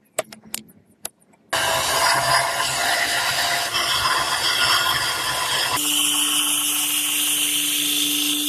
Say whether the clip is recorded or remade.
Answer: recorded